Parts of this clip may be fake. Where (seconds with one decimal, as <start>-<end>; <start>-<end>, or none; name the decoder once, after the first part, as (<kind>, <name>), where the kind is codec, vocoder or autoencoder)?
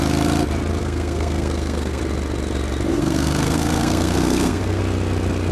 0.8-2.0 (codec, SNAC); 2.9-4.8